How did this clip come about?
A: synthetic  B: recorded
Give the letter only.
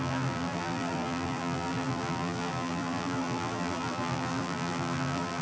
A